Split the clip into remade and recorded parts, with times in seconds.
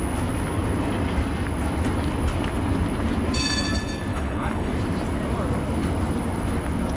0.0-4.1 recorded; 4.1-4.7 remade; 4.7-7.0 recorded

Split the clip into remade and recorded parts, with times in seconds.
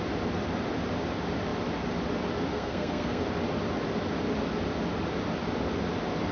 0.0-2.5 recorded; 2.5-3.2 remade; 3.2-6.3 recorded